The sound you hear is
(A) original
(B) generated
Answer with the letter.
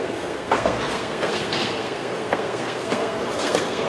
B